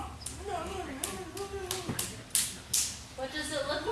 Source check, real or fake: real